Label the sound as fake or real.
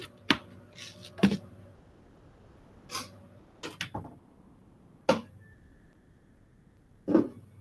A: real